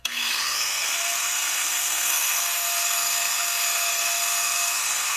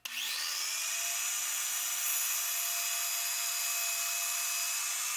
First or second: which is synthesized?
first